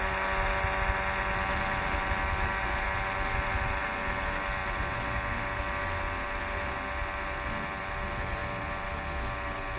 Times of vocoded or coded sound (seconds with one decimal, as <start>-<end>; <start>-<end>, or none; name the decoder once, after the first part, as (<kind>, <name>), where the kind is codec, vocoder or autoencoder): none

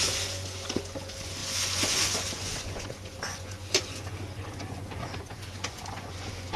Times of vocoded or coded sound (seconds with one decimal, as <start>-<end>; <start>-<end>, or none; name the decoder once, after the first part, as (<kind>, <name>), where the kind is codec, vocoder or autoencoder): 0.0-6.6 (vocoder, Vocos)

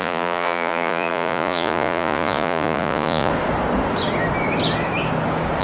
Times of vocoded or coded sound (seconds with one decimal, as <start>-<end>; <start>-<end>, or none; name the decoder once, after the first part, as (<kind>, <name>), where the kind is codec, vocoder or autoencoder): 0.0-3.3 (vocoder, Vocos)